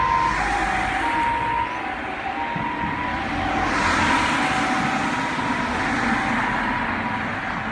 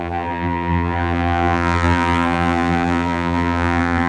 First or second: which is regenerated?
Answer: second